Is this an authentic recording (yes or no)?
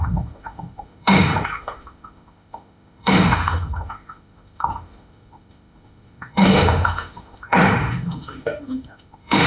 no